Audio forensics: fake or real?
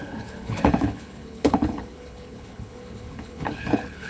fake